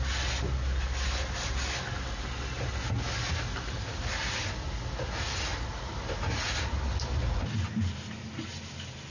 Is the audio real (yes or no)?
yes